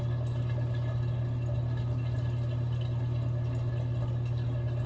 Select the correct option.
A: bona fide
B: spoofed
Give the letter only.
A